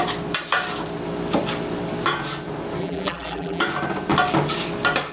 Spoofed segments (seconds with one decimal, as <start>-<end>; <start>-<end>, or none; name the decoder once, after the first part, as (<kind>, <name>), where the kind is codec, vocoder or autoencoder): 2.8-3.6 (vocoder, BigVGAN v2)